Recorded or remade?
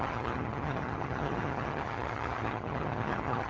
remade